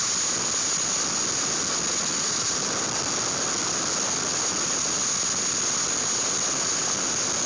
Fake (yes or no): no